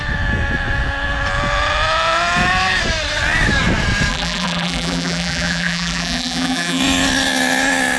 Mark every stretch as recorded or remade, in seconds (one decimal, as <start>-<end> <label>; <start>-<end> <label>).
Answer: 0.0-4.1 recorded; 4.1-6.8 remade; 6.8-8.0 recorded